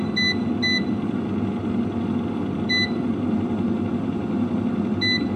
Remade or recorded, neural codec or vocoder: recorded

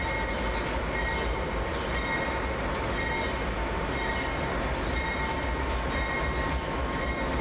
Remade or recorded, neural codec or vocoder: recorded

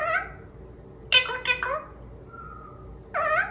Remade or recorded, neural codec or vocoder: recorded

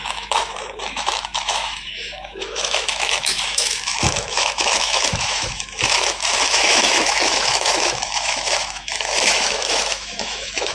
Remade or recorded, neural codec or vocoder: remade, autoencoder, DAC-VAE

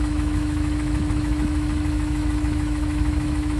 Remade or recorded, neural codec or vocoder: remade, autoencoder, DAC-VAE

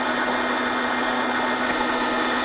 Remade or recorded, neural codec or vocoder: recorded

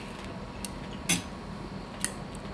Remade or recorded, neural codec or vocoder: recorded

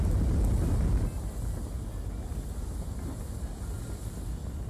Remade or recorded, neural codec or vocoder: recorded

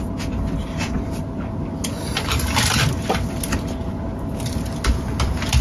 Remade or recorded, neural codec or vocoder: recorded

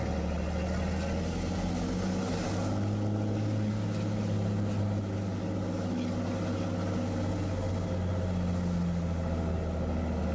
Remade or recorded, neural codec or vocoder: recorded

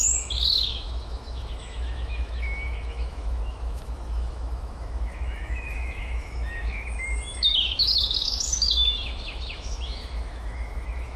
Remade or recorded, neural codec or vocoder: remade, autoencoder, DAC-VAE